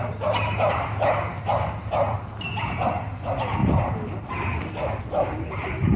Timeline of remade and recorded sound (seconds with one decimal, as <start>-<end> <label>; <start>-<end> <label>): 0.0-6.0 recorded